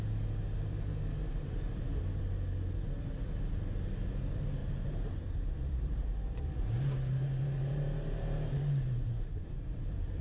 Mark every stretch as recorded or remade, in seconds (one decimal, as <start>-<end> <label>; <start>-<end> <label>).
0.0-1.2 recorded; 1.2-1.9 remade; 1.9-4.6 recorded; 4.6-10.2 remade